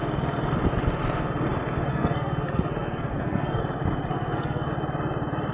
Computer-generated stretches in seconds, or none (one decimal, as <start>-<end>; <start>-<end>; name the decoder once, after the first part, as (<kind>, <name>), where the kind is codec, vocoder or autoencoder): 1.9-3.6 (codec, SNAC); 4.1-4.7